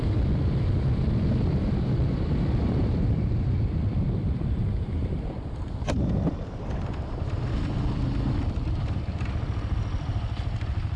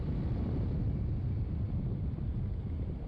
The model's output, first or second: first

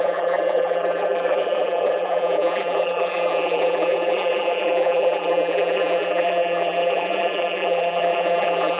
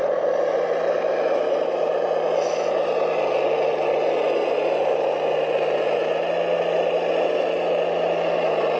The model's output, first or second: first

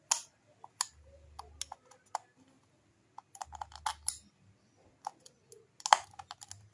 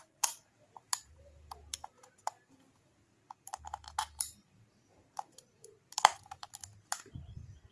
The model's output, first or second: second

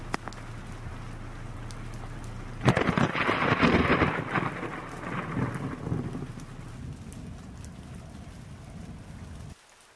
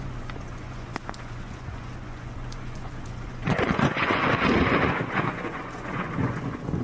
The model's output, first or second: second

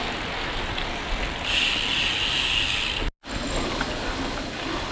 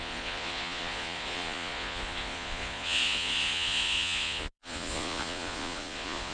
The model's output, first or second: second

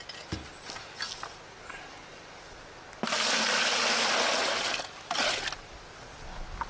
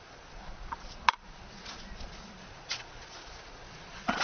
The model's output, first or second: second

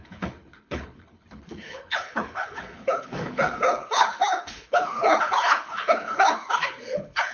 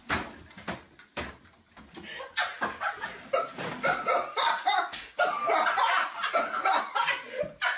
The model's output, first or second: first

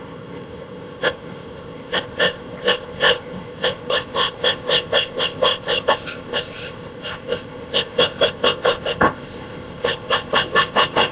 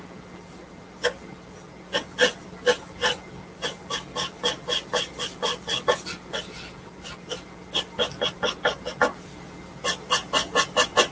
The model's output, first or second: first